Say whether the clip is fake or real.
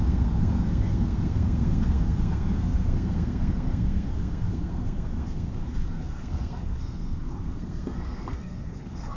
fake